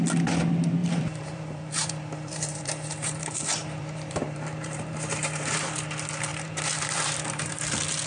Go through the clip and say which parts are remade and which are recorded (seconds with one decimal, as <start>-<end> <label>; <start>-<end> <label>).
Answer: 0.0-0.8 recorded; 0.8-5.7 remade; 5.7-6.3 recorded; 6.3-7.6 remade; 7.6-8.1 recorded